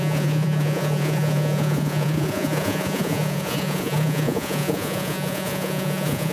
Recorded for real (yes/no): no